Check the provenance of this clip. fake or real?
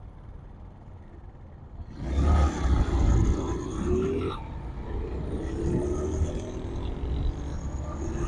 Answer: real